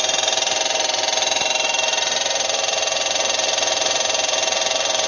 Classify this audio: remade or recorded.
remade